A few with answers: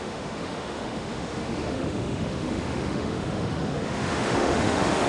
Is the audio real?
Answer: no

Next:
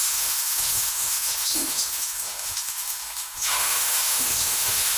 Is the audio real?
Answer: no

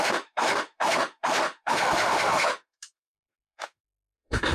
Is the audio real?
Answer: no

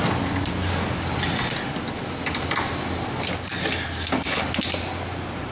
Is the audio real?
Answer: yes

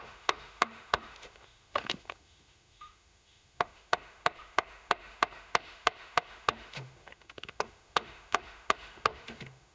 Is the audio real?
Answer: no